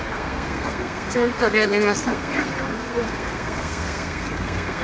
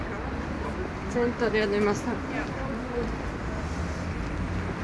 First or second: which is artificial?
first